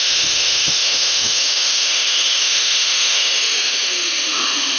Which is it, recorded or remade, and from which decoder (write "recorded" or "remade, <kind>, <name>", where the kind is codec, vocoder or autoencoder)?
remade, autoencoder, DAC-VAE